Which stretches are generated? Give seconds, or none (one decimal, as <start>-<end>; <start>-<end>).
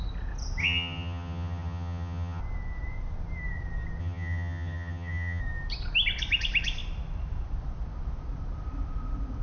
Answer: 0.6-2.4; 4.0-5.4